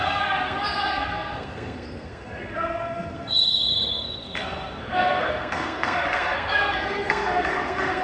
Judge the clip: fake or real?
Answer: fake